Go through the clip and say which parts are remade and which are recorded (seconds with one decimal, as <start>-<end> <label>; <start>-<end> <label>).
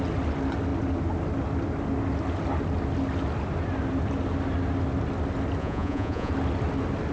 0.0-5.6 recorded; 5.6-6.3 remade; 6.3-7.1 recorded